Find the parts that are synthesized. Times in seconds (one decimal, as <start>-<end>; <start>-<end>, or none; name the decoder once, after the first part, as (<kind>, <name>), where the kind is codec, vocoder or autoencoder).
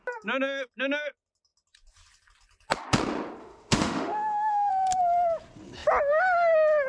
3.4-4.7 (autoencoder, DAC-VAE)